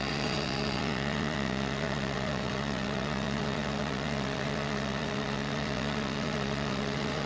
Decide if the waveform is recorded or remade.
remade